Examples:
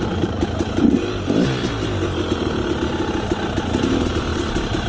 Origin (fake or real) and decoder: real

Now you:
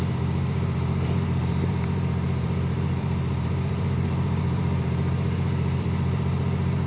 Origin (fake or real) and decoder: fake, vocoder, BigVGAN v2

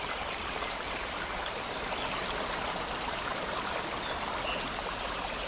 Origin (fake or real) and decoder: real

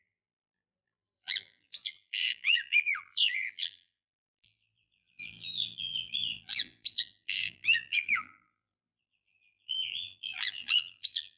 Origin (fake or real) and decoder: fake, vocoder, BigVGAN v2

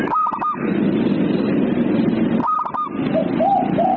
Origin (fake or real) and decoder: real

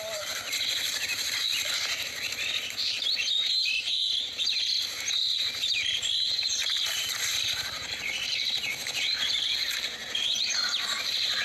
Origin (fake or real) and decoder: fake, vocoder, BigVGAN v2